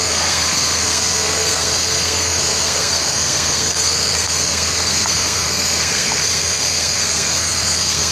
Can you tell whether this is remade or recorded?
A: remade